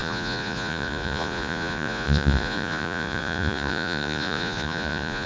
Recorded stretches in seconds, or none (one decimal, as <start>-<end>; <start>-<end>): none